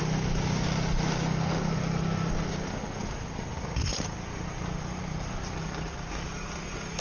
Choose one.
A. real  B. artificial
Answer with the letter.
A